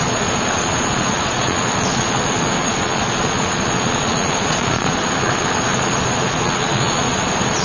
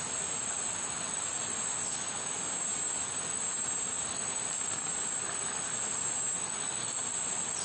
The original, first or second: second